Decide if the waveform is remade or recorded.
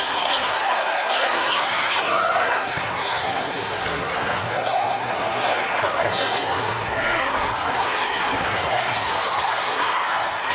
remade